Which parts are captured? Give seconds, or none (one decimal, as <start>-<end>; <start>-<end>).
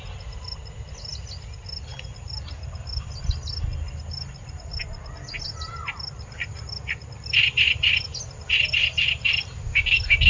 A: 0.0-10.3